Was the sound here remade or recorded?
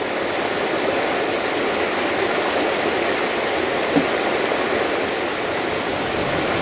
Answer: recorded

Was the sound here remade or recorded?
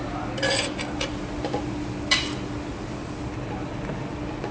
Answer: recorded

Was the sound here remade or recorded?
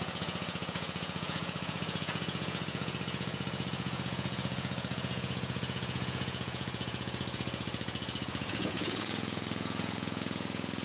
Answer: remade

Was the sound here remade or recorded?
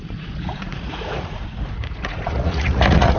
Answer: remade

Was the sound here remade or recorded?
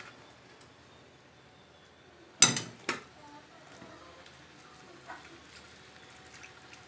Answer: recorded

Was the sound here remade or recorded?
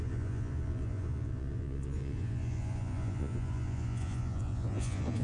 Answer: remade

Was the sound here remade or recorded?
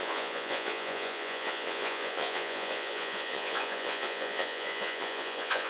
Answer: remade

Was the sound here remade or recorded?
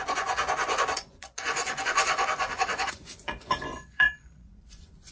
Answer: remade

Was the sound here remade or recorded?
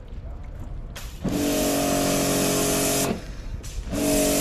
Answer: recorded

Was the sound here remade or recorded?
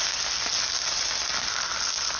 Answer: recorded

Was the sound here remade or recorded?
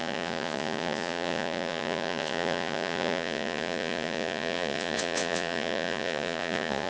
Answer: remade